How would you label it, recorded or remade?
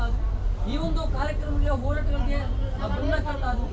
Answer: recorded